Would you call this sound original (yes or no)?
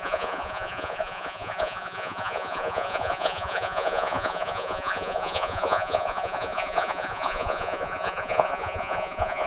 no